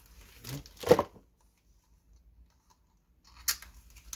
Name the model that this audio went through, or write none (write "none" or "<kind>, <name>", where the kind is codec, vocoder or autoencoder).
none